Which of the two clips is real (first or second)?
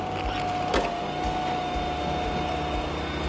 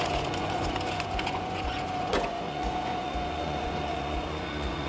first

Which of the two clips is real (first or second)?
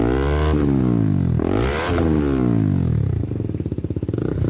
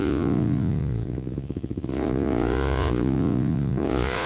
first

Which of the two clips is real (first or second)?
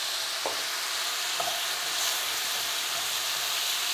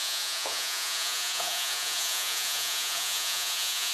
first